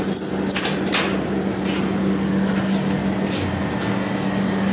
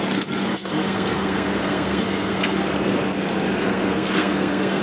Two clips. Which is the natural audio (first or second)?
first